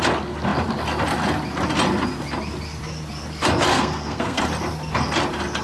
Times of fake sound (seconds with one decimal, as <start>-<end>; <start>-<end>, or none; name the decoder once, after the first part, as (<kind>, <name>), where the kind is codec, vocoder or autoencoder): 3.7-4.4 (codec, SNAC)